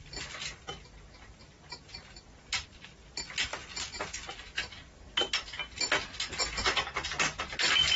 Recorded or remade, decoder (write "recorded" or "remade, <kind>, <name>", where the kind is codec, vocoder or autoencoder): recorded